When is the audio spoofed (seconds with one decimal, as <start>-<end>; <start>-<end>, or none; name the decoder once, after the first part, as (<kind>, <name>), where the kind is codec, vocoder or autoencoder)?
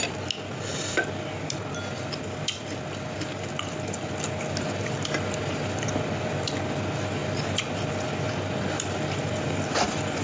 none